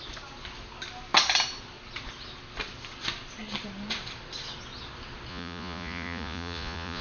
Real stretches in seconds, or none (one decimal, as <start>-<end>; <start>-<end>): 0.0-5.3